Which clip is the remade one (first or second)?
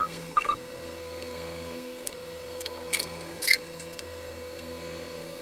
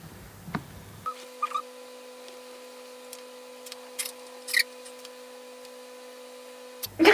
first